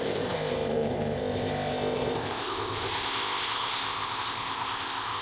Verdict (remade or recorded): remade